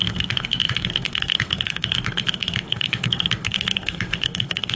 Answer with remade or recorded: remade